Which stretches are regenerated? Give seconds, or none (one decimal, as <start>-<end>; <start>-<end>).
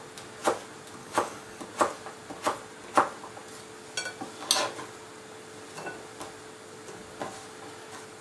1.0-1.6